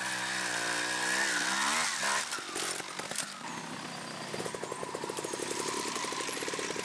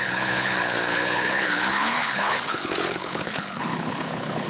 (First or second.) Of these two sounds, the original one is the first